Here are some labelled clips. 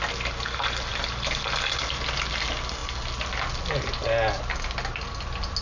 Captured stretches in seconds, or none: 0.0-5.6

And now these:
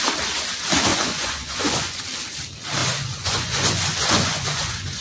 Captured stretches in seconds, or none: 0.0-0.9; 2.0-2.8

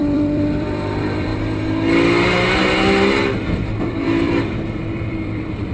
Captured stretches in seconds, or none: 1.3-4.0

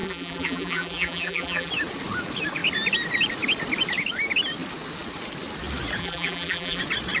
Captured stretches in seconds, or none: 1.7-6.0; 6.8-7.2

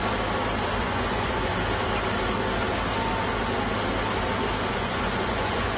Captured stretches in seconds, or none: 0.0-0.8; 1.5-4.7

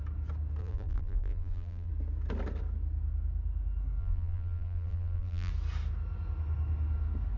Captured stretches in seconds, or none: 0.0-0.6; 1.9-4.0; 5.5-7.4

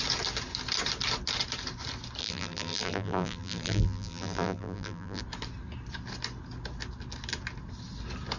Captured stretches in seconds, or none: 0.0-2.2; 5.2-8.4